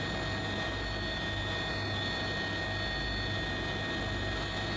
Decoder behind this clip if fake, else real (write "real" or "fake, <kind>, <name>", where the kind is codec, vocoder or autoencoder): real